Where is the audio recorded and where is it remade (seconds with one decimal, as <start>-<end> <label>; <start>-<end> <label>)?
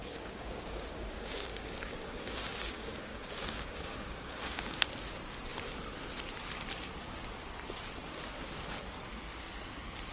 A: 0.0-4.8 remade; 4.8-10.1 recorded